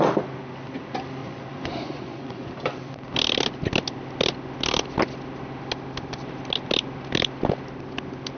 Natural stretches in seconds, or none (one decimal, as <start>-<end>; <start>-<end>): 0.0-1.2; 2.5-8.4